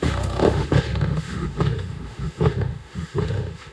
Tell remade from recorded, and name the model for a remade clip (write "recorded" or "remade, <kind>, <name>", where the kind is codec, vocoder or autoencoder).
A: remade, autoencoder, DAC-VAE